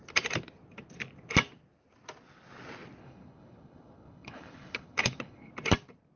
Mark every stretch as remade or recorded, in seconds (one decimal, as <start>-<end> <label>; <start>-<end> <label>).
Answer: 0.0-3.0 recorded; 3.0-5.5 remade; 5.5-6.2 recorded